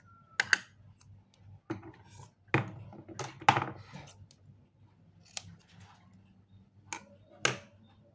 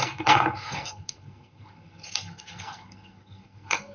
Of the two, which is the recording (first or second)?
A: first